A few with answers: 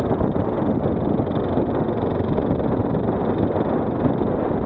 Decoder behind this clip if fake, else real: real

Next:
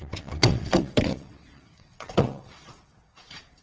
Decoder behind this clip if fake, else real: fake, vocoder, WaveNeXt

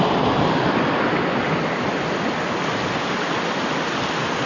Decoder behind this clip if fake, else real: real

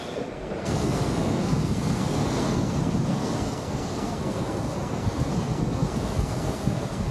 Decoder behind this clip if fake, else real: fake, codec, SNAC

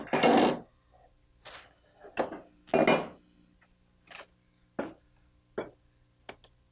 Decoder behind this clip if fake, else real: real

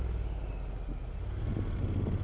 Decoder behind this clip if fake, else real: real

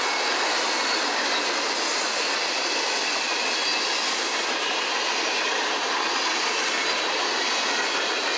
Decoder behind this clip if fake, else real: real